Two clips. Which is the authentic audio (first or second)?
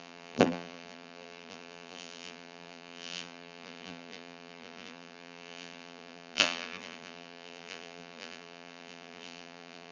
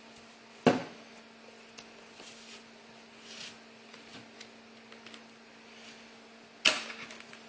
second